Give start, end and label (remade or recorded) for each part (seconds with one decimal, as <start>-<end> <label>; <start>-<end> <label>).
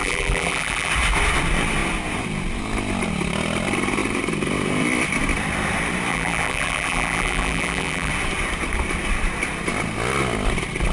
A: 0.0-0.9 remade; 0.9-6.1 recorded; 6.1-8.1 remade; 8.1-10.9 recorded